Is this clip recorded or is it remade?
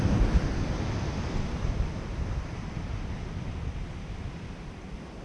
remade